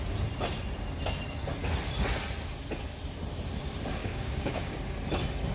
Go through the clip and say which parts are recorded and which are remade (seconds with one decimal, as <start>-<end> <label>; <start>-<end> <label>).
0.0-4.0 recorded; 4.0-4.8 remade; 4.8-5.5 recorded